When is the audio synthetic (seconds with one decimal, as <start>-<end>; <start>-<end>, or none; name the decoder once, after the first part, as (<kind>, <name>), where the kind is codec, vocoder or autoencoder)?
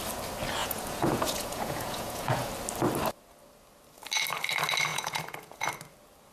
0.6-2.5 (vocoder, Vocos); 4.9-5.7